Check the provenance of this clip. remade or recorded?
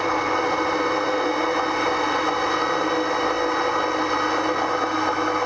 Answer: recorded